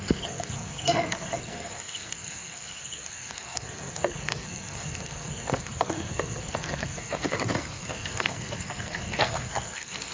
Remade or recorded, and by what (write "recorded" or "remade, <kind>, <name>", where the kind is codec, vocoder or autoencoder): remade, codec, SNAC